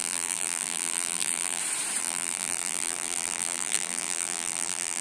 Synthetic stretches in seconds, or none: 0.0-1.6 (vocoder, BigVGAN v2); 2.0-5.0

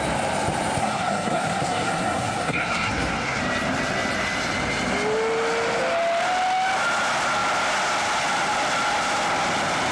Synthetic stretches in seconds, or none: 0.8-3.4 (codec, SNAC)

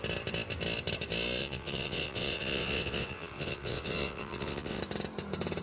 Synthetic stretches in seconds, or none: 1.4-4.8 (vocoder, WaveNeXt)

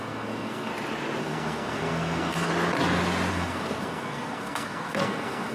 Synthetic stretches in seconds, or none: 0.0-0.7 (codec, SNAC); 1.2-2.5; 3.3-5.5

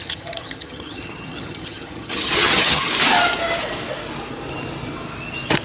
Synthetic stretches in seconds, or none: 0.0-2.9 (vocoder, HiFi-GAN)